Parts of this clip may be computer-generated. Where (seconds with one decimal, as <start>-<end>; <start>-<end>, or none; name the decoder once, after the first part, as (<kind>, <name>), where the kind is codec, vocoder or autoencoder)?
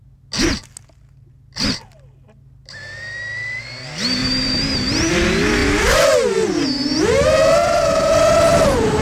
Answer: 4.2-4.8 (vocoder, BigVGAN v2); 7.6-8.1